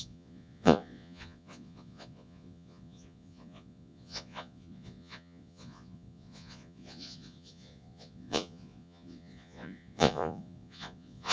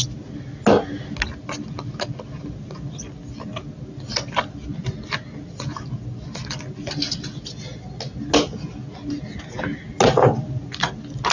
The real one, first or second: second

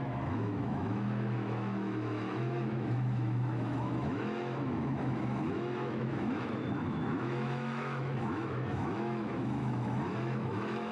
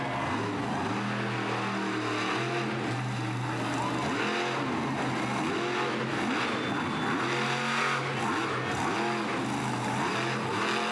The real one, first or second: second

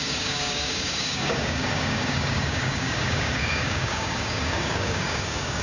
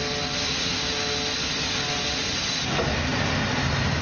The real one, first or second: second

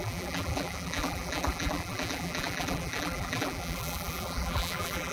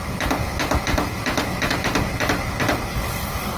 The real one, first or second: second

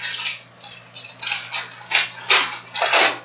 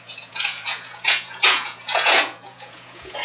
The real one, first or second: first